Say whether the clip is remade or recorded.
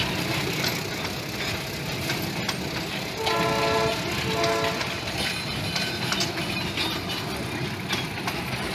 recorded